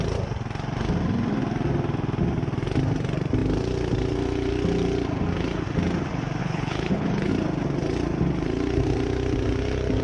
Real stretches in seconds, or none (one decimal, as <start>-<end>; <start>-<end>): 0.0-6.4; 7.3-10.0